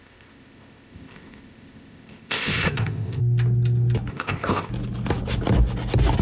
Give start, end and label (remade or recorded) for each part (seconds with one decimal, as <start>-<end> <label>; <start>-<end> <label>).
0.0-3.2 remade; 3.2-4.1 recorded; 4.1-4.7 remade; 4.7-6.2 recorded